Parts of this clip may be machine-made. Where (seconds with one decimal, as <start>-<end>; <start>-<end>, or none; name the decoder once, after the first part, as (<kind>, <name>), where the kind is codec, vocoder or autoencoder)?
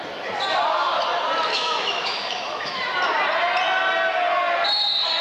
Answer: 1.5-2.8 (autoencoder, DAC-VAE)